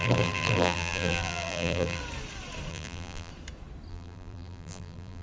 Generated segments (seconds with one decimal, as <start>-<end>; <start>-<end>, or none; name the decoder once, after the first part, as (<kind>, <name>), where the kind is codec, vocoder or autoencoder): 0.0-2.0 (vocoder, BigVGAN v2); 2.7-3.3; 3.9-5.2